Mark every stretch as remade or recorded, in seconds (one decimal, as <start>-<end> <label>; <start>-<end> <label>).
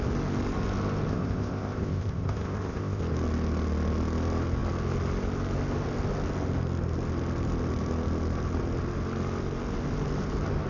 0.0-1.1 recorded; 1.1-3.0 remade; 3.0-10.7 recorded